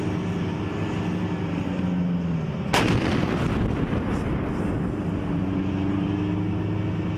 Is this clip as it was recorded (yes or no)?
yes